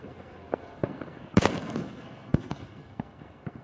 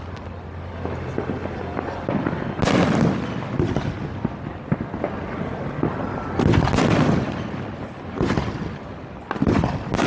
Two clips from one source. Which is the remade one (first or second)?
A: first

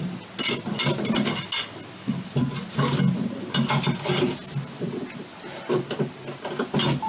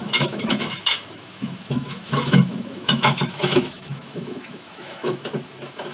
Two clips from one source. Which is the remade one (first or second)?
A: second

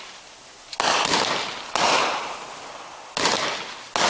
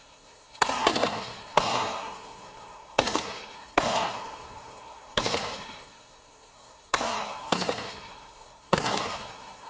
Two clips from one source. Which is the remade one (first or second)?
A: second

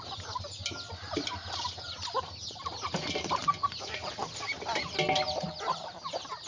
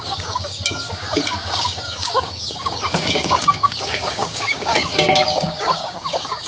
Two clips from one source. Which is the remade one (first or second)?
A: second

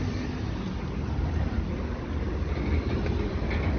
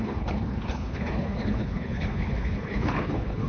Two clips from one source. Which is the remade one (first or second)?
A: second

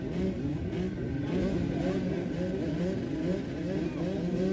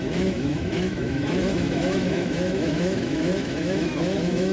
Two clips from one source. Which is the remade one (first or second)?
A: second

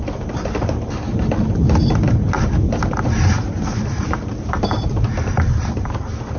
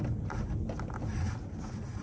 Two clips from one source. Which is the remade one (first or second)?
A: first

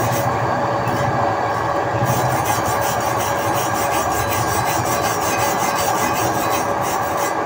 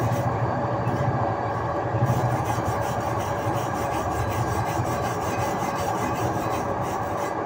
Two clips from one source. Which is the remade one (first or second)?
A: second